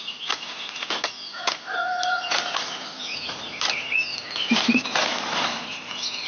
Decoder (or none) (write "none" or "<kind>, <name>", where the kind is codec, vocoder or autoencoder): none